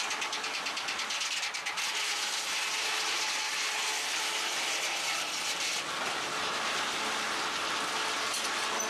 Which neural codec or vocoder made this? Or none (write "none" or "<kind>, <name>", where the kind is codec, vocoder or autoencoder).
none